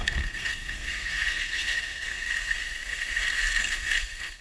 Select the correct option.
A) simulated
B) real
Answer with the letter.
A